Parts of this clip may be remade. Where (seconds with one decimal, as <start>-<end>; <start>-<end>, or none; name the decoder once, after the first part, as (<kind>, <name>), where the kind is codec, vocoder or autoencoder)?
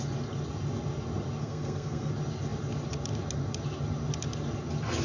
1.4-2.1 (codec, SNAC)